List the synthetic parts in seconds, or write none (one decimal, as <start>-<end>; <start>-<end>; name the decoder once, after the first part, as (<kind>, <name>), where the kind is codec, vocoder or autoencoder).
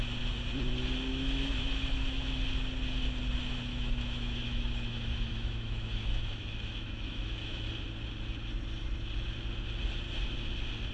1.1-2.3 (autoencoder, DAC-VAE); 3.7-7.7